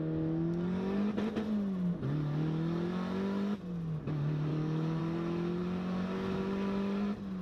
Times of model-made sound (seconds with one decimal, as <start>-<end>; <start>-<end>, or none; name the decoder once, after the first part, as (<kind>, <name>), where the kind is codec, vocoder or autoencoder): 4.5-5.0 (codec, DAC)